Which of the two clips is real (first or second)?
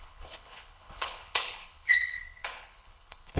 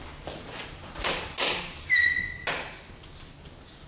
second